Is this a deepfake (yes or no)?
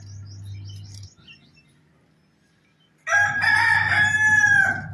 no